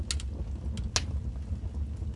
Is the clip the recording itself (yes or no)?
yes